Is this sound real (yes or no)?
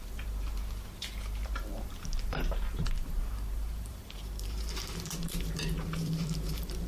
no